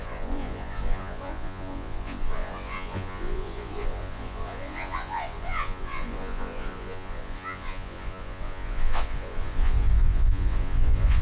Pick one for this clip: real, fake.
fake